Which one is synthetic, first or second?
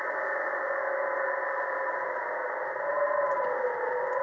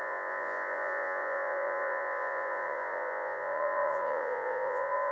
second